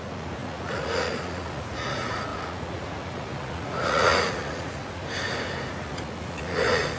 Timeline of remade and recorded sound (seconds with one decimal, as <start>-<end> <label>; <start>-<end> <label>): 0.0-5.0 remade; 5.0-5.7 recorded; 5.7-7.0 remade